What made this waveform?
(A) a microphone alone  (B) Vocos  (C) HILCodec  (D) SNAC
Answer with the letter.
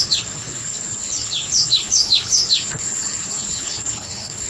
C